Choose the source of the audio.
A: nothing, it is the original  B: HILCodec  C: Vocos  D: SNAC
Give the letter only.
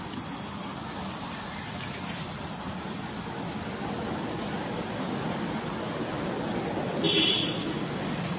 A